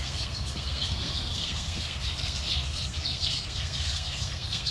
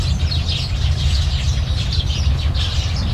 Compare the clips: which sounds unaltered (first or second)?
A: second